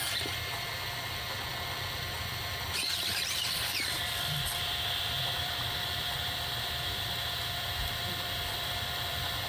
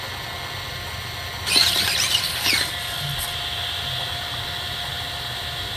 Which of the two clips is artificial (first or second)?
first